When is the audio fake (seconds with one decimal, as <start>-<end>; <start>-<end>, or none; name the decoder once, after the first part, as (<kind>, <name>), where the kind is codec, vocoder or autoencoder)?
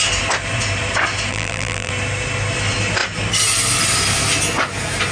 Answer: 1.3-1.9 (vocoder, BigVGAN v2)